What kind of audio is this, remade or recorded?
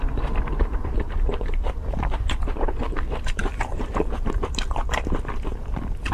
remade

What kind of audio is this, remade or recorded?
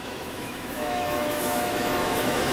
remade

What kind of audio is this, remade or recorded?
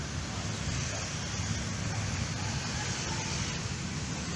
recorded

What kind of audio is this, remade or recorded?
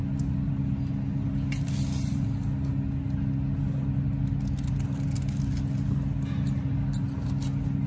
recorded